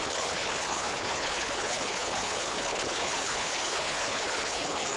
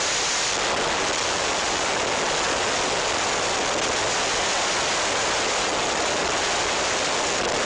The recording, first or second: second